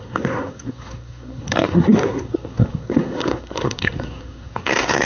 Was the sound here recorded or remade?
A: remade